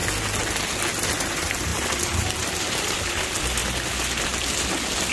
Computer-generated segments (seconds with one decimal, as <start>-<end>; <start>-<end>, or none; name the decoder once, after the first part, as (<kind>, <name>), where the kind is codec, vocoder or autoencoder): 0.9-1.7 (vocoder, BigVGAN v2); 2.2-3.6; 4.3-5.1